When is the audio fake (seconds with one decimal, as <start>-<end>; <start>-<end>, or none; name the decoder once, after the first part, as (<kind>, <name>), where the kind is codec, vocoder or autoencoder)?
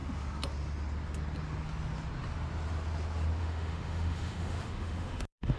3.4-5.6 (autoencoder, DAC-VAE)